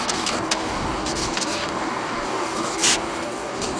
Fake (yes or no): yes